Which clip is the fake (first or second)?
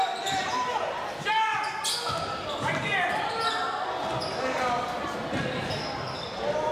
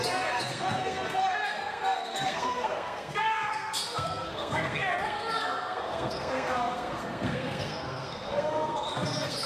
second